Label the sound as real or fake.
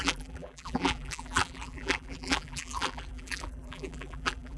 fake